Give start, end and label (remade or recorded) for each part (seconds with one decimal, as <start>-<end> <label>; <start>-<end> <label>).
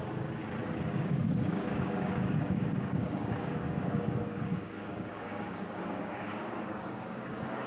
0.0-0.4 remade; 0.4-0.9 recorded; 0.9-7.7 remade